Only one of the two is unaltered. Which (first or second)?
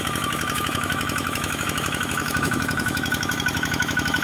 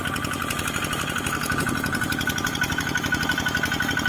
second